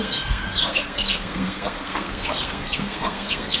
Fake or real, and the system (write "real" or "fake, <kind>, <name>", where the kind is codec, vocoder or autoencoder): fake, codec, SNAC